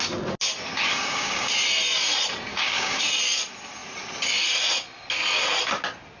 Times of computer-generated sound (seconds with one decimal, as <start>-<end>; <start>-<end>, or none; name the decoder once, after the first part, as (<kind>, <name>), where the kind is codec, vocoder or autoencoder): 0.9-1.5 (codec, DAC); 2.5-3.0